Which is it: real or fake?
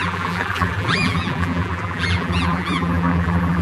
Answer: fake